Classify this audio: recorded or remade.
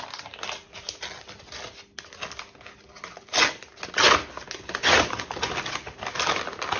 recorded